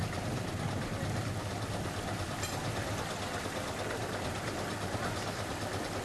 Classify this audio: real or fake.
real